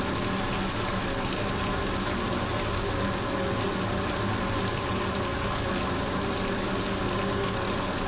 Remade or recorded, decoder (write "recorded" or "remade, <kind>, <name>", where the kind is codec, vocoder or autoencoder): recorded